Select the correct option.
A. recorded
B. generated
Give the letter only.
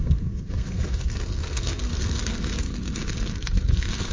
B